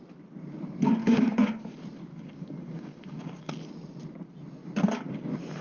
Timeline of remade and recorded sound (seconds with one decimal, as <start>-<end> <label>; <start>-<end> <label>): 0.0-1.0 recorded; 1.0-1.6 remade; 1.6-2.1 recorded; 2.1-3.5 remade; 3.5-5.6 recorded